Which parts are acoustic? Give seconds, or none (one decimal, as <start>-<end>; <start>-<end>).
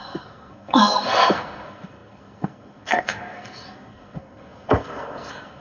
none